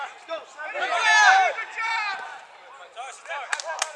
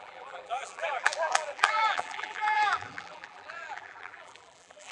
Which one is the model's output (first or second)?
second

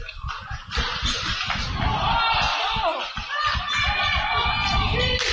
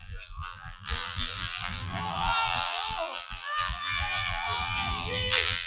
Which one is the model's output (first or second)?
second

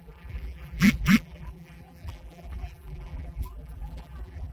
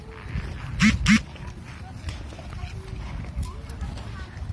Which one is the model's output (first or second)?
first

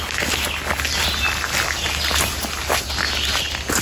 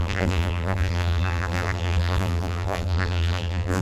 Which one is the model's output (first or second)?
second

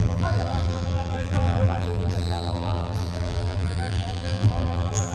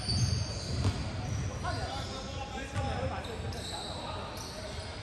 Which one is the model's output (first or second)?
first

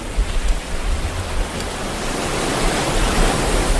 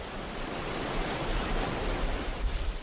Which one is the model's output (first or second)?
second